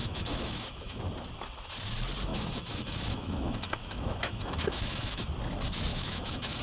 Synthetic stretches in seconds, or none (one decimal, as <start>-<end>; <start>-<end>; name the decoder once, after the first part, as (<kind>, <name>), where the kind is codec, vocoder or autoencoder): 0.0-1.0 (autoencoder, DAC-VAE); 2.3-5.3; 5.9-6.6